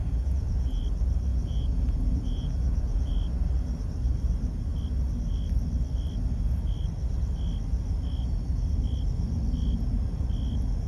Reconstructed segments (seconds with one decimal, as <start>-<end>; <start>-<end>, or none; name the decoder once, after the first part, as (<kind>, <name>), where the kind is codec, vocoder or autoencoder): 0.0-0.8 (vocoder, Vocos); 1.3-3.1